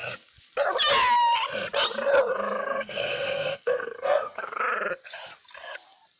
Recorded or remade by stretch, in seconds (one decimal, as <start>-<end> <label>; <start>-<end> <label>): 0.0-2.6 recorded; 2.6-4.6 remade; 4.6-6.2 recorded